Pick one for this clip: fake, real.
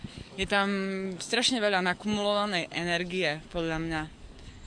fake